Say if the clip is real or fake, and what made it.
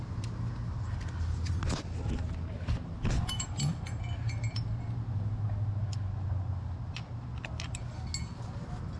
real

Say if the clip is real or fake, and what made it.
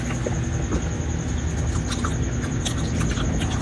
real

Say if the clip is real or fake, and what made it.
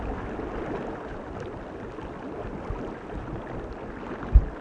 real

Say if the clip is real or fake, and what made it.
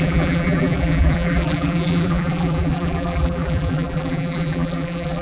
fake, vocoder, BigVGAN v2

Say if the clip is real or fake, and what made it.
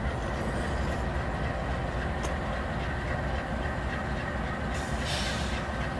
real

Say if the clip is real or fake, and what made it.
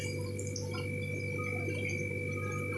real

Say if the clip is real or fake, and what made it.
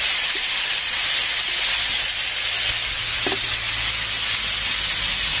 real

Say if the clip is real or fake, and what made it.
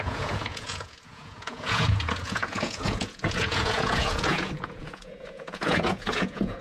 fake, vocoder, Vocos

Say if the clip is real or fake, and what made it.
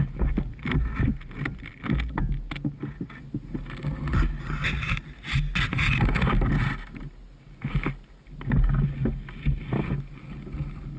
real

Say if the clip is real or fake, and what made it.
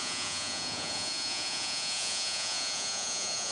fake, vocoder, Vocos